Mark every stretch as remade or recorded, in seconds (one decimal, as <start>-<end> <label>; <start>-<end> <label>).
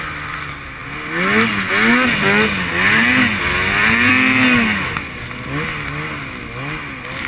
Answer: 0.0-0.8 remade; 0.8-3.4 recorded; 3.4-4.1 remade; 4.1-7.3 recorded